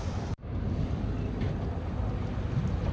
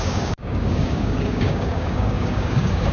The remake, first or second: second